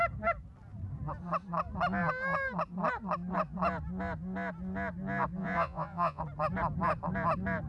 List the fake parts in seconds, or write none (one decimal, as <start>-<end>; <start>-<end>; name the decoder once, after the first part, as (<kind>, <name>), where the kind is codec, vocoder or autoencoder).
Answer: 5.4-6.2 (vocoder, Vocos)